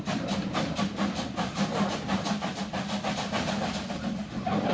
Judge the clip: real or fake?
real